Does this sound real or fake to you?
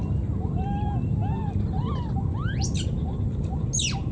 real